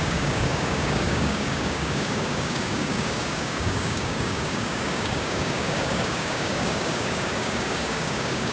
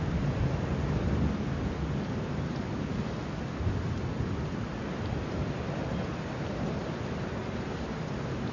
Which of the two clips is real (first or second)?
second